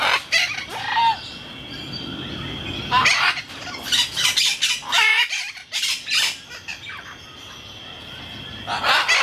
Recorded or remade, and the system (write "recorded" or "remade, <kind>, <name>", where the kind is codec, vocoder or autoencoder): recorded